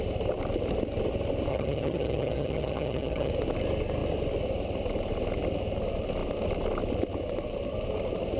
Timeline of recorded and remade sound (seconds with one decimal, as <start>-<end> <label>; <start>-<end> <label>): 0.0-1.5 recorded; 1.5-3.3 remade; 3.3-8.4 recorded